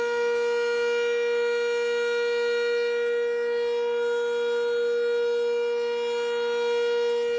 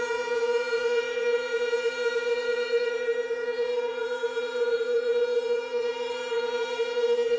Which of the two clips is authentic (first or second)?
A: first